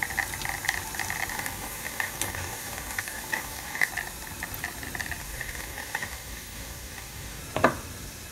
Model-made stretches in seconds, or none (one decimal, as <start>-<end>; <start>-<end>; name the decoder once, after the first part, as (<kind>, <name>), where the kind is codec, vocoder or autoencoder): 1.3-3.9 (codec, DAC); 5.2-7.4